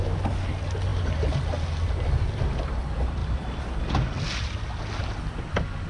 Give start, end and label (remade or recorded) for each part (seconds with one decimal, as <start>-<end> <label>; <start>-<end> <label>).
0.0-5.9 recorded

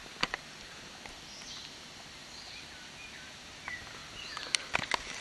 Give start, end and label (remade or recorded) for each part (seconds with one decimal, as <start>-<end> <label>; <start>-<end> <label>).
0.0-0.7 remade; 0.7-2.2 recorded; 2.2-3.1 remade; 3.1-4.0 recorded; 4.0-4.8 remade; 4.8-5.2 recorded

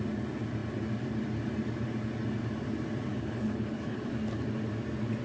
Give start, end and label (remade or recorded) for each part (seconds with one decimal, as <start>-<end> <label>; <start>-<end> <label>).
0.0-3.1 recorded; 3.1-4.1 remade; 4.1-5.2 recorded

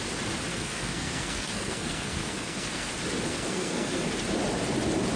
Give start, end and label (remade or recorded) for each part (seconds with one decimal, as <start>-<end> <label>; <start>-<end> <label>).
0.0-0.5 recorded; 0.5-2.9 remade; 2.9-3.3 recorded; 3.3-4.1 remade; 4.1-5.2 recorded

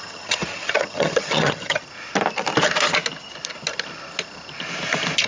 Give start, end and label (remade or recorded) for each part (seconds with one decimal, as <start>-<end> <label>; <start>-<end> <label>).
0.0-1.8 remade; 1.8-5.3 recorded

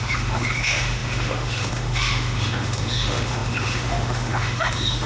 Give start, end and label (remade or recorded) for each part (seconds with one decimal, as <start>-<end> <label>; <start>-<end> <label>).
0.0-5.1 remade

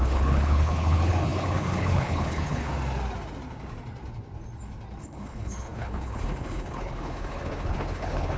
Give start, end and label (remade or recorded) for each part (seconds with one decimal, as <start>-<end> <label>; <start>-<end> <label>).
0.0-2.7 remade; 2.7-5.0 recorded; 5.0-8.4 remade